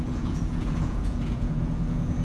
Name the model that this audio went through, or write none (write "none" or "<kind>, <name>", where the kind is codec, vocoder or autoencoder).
vocoder, Vocos